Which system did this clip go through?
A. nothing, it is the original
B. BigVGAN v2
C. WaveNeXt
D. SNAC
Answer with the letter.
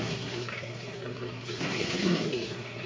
D